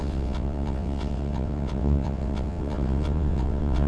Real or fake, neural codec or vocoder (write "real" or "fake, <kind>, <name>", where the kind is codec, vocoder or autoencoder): fake, vocoder, WaveNeXt